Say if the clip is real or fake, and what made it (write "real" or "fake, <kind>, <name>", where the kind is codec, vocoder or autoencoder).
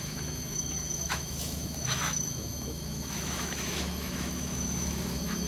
fake, autoencoder, DAC-VAE